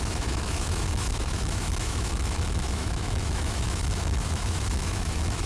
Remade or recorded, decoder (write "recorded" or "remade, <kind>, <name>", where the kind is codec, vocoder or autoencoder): remade, autoencoder, DAC-VAE